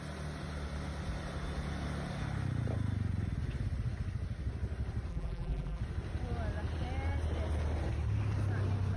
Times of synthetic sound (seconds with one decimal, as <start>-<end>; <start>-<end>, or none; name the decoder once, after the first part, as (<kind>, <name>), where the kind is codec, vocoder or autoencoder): 5.1-5.8 (vocoder, BigVGAN v2)